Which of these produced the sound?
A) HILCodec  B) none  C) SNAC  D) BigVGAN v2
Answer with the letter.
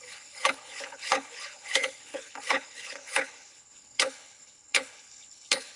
A